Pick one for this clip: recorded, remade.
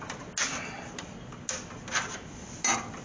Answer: recorded